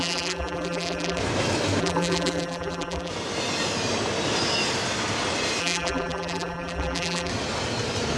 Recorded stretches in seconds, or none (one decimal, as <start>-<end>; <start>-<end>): 1.2-1.8; 3.1-5.6; 7.3-8.2